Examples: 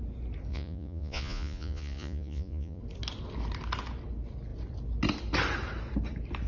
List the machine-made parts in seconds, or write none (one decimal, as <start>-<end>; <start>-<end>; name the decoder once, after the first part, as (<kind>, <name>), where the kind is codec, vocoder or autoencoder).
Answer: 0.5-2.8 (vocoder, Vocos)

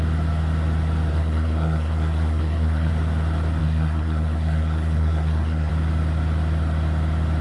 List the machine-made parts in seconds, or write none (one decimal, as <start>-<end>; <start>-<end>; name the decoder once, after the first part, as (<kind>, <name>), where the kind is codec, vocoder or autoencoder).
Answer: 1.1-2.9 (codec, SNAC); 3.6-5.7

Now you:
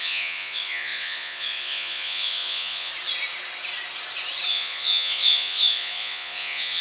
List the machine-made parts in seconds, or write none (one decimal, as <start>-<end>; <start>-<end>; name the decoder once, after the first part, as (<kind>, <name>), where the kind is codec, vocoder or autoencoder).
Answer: 0.0-2.9 (vocoder, Vocos); 4.5-6.8